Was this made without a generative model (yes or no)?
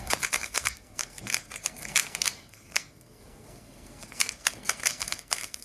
no